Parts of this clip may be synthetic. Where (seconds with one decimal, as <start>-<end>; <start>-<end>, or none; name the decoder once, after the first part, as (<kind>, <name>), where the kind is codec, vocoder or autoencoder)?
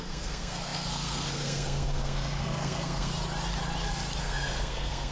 0.0-3.1 (codec, SNAC); 4.2-5.1